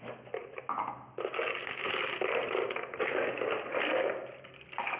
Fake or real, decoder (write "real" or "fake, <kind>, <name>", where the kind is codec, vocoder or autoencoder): real